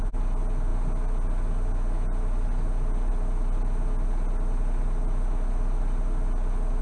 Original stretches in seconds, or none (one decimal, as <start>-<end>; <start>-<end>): 0.0-6.8